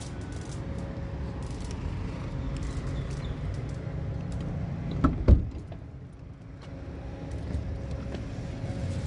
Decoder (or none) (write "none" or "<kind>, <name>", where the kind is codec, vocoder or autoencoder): none